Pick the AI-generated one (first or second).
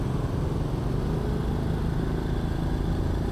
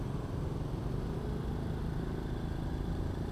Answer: second